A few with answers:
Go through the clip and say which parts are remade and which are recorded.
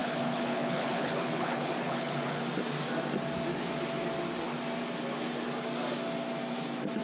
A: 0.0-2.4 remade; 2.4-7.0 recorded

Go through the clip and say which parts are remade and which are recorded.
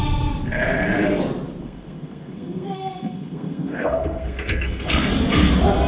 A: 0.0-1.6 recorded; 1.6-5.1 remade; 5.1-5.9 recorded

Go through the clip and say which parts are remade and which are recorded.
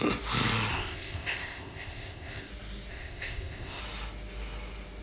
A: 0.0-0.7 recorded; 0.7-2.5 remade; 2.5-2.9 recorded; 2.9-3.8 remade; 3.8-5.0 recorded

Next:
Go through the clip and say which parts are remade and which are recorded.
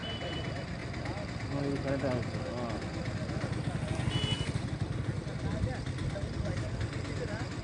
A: 0.0-0.8 remade; 0.8-4.5 recorded; 4.5-5.0 remade; 5.0-5.8 recorded; 5.8-7.6 remade